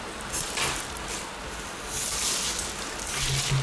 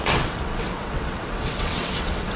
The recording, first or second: first